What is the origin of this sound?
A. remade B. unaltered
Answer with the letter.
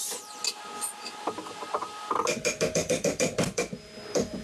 B